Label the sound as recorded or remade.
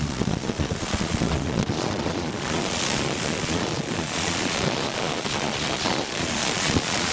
remade